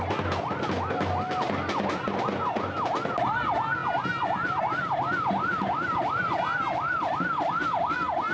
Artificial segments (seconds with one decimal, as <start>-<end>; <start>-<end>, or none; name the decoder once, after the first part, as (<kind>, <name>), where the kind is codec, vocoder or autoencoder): none